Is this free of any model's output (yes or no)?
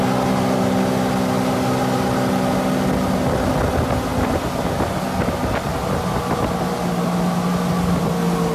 yes